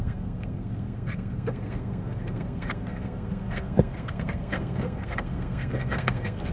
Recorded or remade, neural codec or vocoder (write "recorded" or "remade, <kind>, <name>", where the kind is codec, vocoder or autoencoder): remade, codec, SNAC